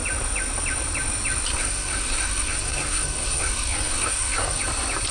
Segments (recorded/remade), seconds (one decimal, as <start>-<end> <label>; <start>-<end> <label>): 0.0-1.5 recorded; 1.5-4.6 remade; 4.6-5.1 recorded